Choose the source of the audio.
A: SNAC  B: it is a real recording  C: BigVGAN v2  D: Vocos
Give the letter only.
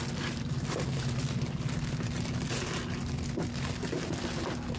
C